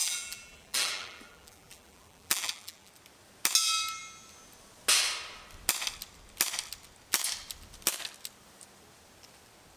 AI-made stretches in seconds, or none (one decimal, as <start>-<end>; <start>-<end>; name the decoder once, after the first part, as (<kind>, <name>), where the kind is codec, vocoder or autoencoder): 0.0-2.9 (vocoder, BigVGAN v2)